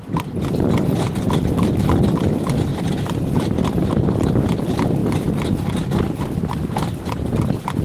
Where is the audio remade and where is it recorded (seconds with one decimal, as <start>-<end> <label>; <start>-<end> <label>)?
0.0-5.0 remade; 5.0-6.2 recorded; 6.2-7.8 remade